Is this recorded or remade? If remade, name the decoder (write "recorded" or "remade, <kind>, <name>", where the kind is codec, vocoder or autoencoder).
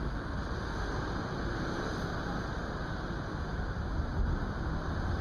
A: recorded